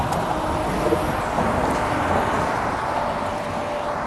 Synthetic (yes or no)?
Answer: no